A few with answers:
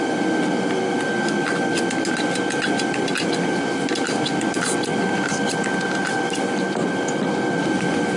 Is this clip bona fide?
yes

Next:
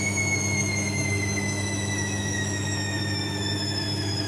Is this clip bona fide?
no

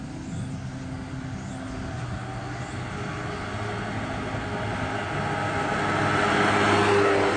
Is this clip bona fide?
yes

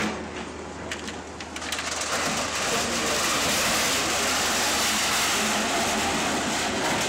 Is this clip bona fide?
yes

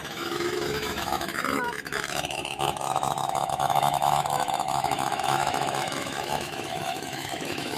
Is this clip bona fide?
no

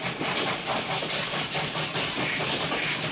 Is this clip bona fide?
yes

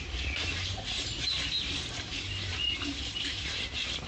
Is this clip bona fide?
yes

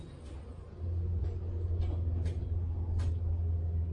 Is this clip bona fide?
yes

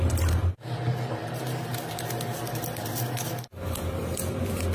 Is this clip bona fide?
yes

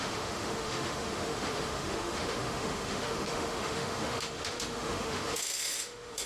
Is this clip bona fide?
no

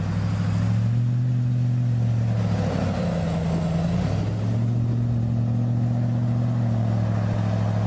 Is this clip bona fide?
yes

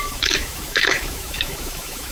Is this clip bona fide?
no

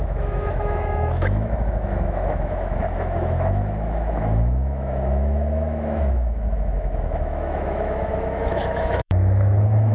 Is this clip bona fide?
no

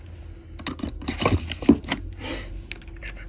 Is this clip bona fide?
yes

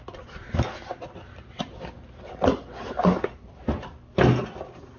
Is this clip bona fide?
yes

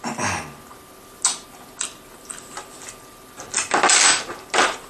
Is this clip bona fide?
yes